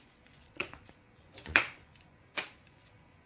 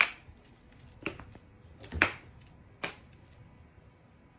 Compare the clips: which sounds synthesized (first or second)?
first